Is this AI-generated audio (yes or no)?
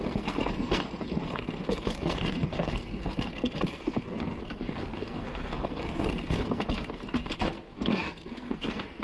yes